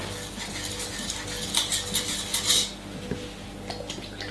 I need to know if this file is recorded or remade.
recorded